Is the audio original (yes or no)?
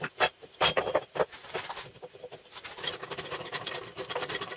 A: no